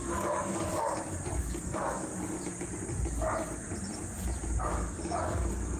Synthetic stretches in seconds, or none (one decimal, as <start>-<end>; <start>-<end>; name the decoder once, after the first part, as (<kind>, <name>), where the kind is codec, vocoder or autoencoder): 0.0-2.1 (codec, DAC); 4.6-5.8